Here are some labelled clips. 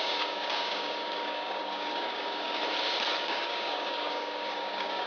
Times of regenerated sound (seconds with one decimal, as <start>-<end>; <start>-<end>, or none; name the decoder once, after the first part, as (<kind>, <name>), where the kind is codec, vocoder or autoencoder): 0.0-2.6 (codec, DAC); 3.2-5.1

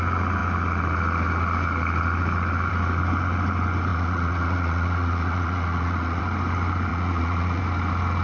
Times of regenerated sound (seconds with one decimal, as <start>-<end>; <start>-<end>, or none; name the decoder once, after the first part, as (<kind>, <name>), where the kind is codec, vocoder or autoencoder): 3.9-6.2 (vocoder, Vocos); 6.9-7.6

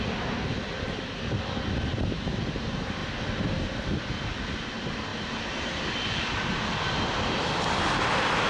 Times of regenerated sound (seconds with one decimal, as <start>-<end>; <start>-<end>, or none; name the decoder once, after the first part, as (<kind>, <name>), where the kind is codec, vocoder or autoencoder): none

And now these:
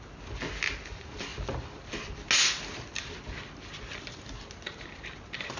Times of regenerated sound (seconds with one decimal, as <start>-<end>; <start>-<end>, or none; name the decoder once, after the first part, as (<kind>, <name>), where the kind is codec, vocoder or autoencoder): none

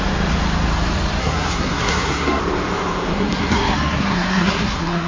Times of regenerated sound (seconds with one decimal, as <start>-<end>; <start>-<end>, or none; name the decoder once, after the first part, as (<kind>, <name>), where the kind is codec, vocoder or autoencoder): 1.2-2.4 (codec, SNAC); 3.1-5.1

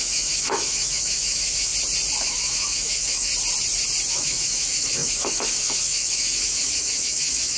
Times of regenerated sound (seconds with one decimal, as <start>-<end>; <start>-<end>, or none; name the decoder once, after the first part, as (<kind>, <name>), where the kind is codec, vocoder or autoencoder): 0.0-1.7 (autoencoder, DAC-VAE); 2.2-3.3; 4.1-7.6

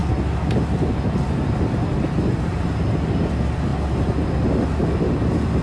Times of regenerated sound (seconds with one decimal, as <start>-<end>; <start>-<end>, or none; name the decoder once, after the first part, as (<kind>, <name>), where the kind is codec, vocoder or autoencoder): none

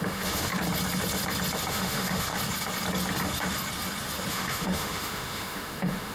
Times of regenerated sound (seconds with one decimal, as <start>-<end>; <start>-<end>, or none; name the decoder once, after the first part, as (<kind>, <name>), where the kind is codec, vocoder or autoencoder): 0.0-0.5 (autoencoder, DAC-VAE); 1.7-2.3; 4.3-6.1